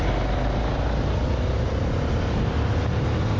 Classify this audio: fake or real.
real